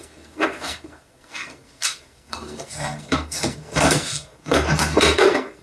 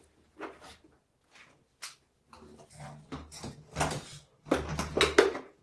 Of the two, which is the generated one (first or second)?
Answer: first